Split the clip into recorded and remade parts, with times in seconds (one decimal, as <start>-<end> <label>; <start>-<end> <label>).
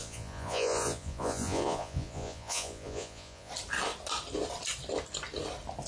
0.0-3.5 remade; 3.5-5.9 recorded